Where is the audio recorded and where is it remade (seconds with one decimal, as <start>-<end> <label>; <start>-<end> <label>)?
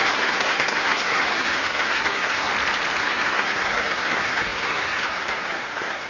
0.0-2.5 remade; 2.5-3.0 recorded; 3.0-6.1 remade